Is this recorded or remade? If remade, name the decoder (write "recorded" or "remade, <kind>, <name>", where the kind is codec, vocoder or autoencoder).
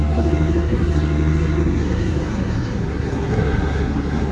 remade, codec, SNAC